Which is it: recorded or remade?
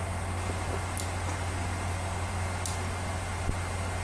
recorded